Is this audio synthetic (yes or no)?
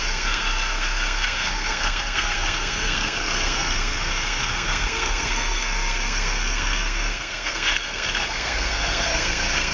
yes